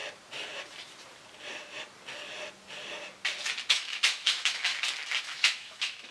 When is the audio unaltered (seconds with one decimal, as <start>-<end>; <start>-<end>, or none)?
0.0-3.7; 4.7-5.2